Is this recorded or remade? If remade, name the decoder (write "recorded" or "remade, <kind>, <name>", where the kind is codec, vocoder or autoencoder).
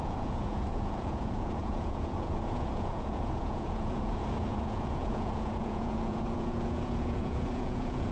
remade, vocoder, Vocos